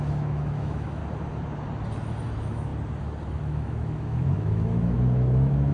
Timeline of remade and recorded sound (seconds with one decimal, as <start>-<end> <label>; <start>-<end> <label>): 0.0-1.0 remade; 1.0-2.3 recorded; 2.3-2.7 remade; 2.7-3.3 recorded; 3.3-5.7 remade